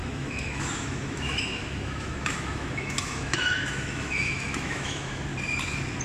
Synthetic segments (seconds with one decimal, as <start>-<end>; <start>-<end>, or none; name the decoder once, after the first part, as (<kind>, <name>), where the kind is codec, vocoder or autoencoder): 0.0-5.3 (autoencoder, DAC-VAE)